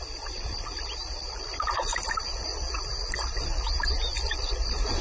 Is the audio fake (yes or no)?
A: no